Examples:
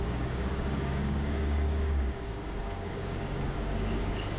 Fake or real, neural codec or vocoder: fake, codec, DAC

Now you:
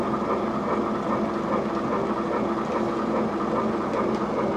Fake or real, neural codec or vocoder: real